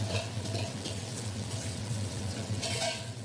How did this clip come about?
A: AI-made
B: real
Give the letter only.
A